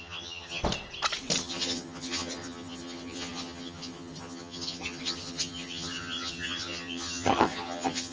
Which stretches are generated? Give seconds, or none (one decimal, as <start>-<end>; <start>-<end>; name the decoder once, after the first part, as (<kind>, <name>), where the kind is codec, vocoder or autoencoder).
0.0-0.6 (vocoder, HiFi-GAN); 1.4-8.1